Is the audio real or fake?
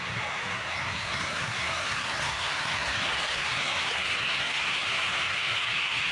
fake